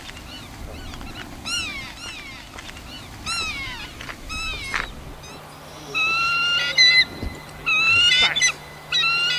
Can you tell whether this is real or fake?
real